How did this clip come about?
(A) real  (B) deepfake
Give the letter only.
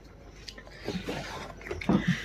A